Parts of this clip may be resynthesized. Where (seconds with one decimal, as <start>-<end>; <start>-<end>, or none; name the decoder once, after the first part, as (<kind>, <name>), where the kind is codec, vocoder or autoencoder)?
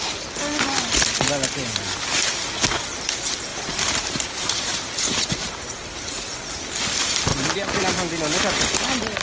3.5-6.6 (vocoder, BigVGAN v2)